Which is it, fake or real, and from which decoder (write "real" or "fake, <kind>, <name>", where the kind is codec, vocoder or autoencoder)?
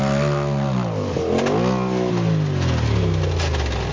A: real